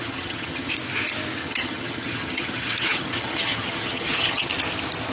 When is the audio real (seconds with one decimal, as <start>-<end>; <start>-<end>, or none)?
0.7-1.4; 4.5-5.1